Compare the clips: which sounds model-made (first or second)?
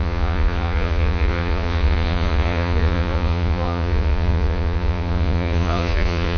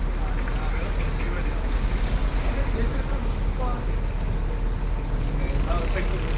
first